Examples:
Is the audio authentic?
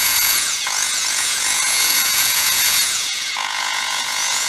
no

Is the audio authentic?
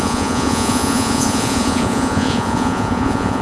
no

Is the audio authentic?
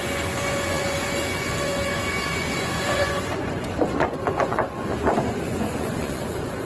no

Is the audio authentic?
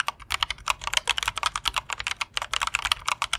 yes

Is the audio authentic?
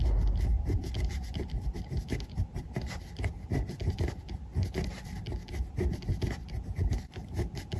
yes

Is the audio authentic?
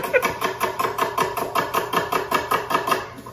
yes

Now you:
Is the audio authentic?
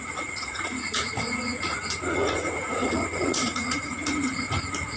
no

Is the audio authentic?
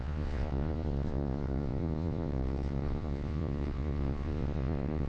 no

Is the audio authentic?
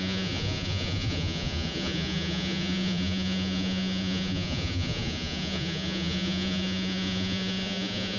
no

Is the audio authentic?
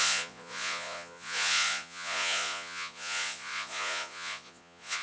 no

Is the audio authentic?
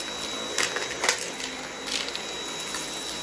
yes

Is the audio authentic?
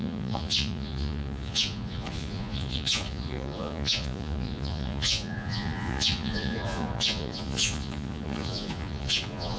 no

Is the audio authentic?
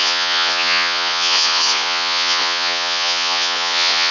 no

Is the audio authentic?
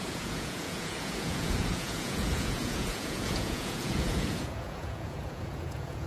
no